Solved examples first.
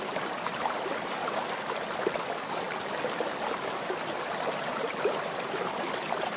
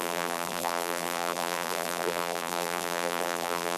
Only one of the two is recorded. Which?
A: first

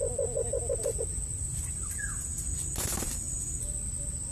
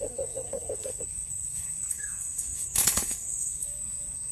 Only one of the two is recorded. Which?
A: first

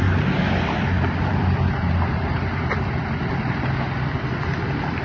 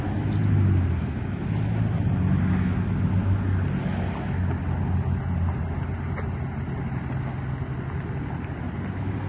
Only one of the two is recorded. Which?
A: second